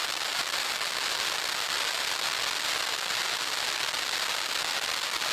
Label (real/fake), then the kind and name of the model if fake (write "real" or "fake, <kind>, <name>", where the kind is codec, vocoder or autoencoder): real